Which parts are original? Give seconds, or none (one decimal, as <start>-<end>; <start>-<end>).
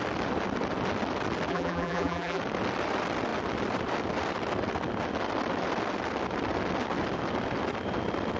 0.0-1.5; 2.4-8.4